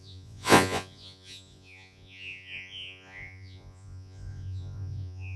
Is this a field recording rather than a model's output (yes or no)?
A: no